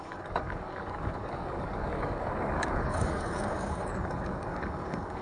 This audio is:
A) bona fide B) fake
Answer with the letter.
B